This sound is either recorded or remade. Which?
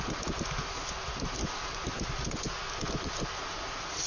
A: recorded